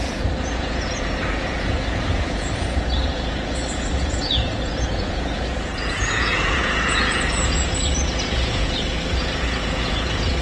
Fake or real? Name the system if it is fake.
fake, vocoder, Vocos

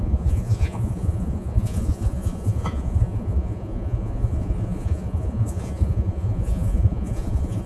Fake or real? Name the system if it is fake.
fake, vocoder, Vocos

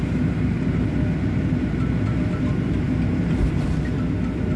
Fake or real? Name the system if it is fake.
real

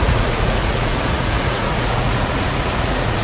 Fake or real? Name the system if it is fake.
fake, vocoder, Vocos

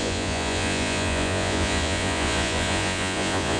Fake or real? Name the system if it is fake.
fake, vocoder, Vocos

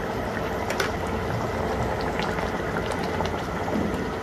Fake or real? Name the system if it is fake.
real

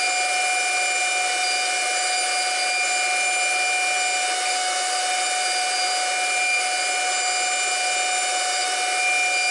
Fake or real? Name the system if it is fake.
real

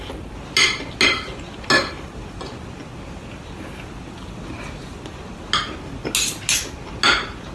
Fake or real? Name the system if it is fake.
real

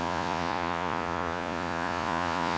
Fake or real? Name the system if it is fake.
fake, vocoder, Vocos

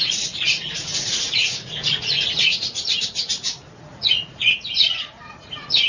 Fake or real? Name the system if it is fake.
fake, vocoder, Vocos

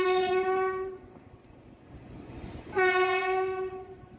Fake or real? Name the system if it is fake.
fake, vocoder, Vocos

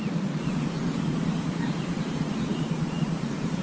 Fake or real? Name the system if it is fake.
fake, vocoder, Vocos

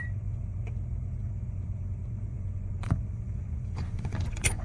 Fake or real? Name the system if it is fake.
fake, vocoder, Vocos